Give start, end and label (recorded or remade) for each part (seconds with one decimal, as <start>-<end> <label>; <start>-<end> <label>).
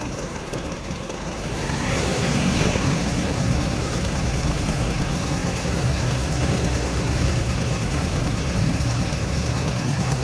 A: 0.0-10.2 remade